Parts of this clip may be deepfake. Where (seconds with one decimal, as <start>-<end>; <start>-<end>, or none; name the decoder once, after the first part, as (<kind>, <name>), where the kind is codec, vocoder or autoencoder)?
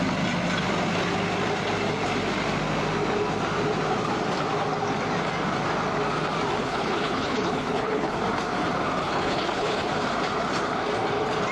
6.6-8.2 (codec, HILCodec); 9.0-9.9